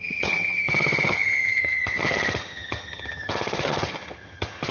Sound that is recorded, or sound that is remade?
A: remade